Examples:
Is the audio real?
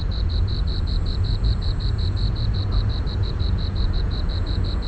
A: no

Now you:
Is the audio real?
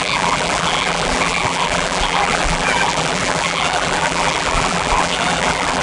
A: no